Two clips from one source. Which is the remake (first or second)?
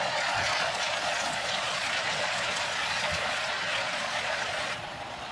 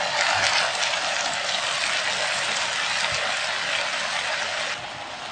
first